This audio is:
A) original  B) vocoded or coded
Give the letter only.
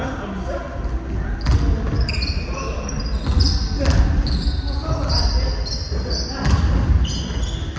A